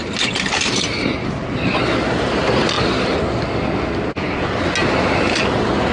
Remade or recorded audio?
recorded